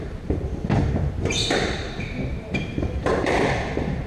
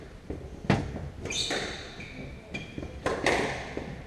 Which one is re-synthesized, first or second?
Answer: first